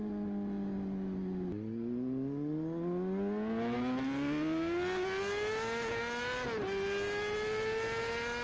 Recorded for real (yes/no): yes